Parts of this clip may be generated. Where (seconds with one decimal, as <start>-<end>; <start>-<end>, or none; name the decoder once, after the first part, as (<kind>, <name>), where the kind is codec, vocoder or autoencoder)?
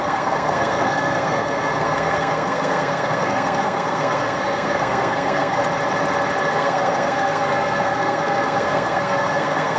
0.0-5.6 (codec, SNAC); 6.4-9.8